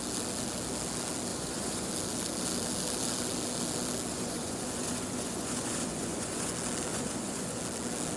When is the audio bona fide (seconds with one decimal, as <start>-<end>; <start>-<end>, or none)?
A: 0.0-1.3; 1.9-4.1; 6.5-6.9; 7.6-8.2